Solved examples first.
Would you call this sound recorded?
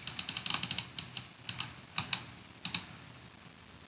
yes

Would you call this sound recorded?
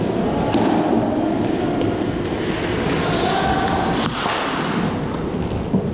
yes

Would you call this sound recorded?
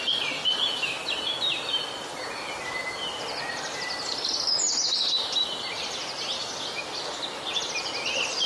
yes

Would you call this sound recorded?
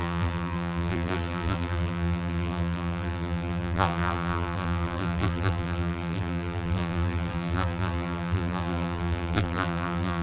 no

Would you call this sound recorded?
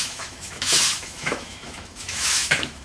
no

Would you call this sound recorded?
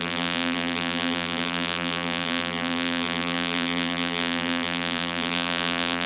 no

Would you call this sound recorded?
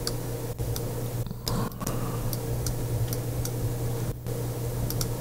yes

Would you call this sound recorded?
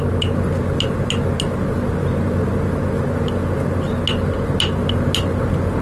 yes